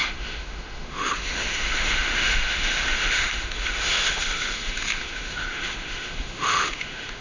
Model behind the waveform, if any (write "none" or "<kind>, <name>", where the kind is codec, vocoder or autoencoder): autoencoder, DAC-VAE